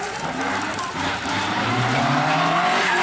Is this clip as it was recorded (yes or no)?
no